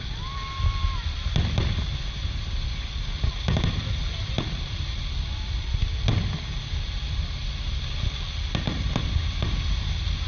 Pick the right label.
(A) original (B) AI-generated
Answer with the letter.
A